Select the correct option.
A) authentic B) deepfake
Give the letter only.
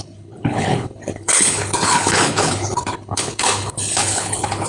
B